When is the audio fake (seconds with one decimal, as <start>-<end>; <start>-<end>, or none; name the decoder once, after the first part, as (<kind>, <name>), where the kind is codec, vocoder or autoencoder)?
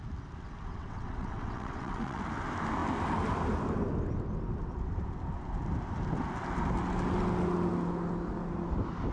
0.7-2.2 (vocoder, WaveNeXt)